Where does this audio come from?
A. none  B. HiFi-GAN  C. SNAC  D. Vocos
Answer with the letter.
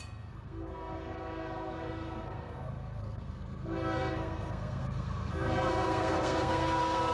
C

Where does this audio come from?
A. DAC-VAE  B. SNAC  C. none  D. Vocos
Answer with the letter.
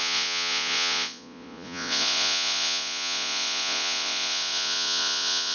D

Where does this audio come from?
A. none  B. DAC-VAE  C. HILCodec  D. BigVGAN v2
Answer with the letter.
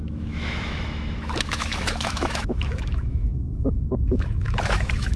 B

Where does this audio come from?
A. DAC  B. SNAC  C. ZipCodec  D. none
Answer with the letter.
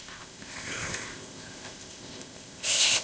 C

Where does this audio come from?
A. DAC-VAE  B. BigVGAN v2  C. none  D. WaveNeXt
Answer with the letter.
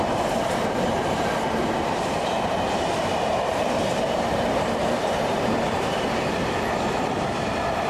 B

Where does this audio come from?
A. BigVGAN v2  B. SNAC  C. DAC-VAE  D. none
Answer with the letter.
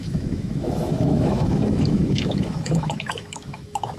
C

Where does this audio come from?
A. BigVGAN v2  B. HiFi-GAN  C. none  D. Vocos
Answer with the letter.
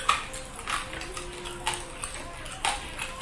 C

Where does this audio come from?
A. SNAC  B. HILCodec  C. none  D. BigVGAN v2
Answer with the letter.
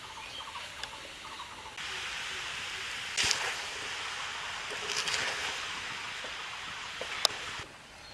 C